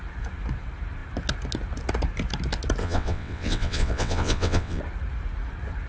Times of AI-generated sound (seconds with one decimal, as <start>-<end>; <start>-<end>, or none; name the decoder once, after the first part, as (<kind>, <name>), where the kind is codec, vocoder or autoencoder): 2.8-4.8 (vocoder, WaveNeXt)